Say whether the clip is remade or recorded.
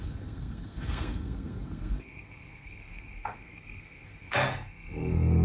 remade